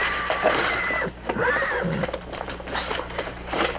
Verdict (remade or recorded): remade